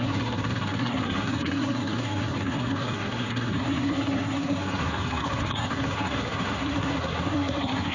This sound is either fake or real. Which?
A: fake